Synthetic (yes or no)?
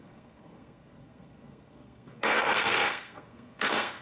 yes